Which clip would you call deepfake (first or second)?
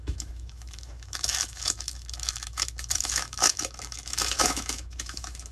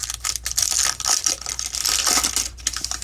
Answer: first